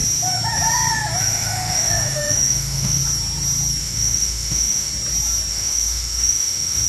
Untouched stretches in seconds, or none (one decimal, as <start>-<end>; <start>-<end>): 0.0-1.2; 3.0-3.8; 4.9-5.5